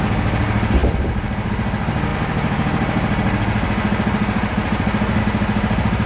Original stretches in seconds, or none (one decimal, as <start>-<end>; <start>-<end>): 0.0-6.1